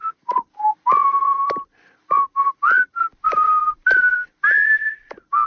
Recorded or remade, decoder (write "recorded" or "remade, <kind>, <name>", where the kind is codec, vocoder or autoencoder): recorded